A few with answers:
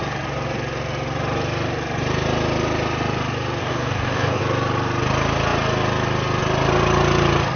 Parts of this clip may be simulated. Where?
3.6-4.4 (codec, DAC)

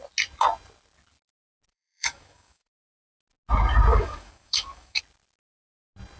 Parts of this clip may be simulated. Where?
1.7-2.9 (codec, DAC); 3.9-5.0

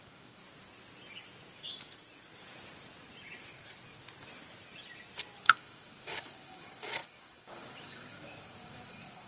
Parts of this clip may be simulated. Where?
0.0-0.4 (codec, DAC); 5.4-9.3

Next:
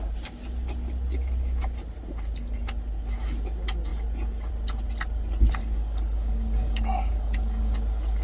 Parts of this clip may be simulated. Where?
5.6-7.7 (codec, DAC)

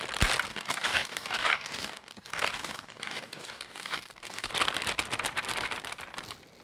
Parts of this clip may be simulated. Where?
0.5-4.5 (codec, DAC)

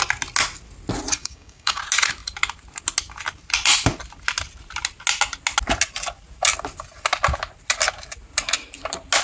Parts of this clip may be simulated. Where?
1.2-1.8 (codec, DAC)

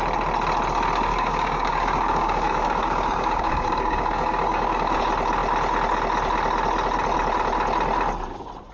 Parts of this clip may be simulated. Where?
1.1-5.0 (codec, DAC)